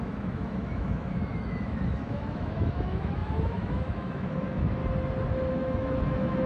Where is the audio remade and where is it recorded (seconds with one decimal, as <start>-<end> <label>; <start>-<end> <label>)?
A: 0.0-4.8 remade; 4.8-5.5 recorded; 5.5-6.5 remade